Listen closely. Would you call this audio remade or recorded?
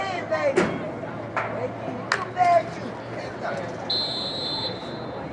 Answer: recorded